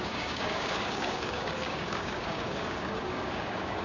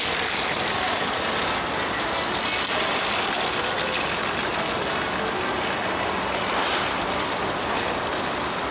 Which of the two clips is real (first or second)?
second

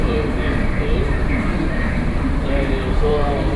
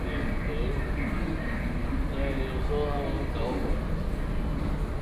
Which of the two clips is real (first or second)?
second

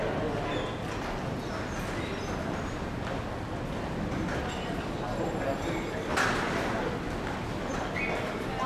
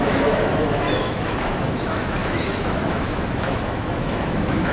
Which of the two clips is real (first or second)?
first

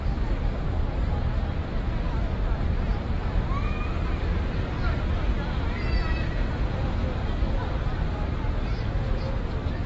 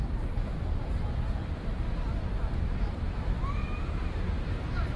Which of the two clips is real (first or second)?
first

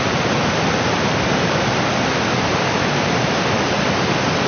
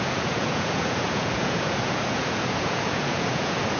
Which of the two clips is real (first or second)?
first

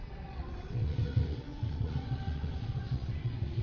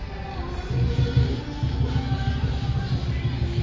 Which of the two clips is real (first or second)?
second